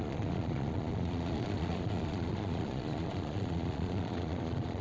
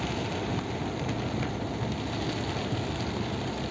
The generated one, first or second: first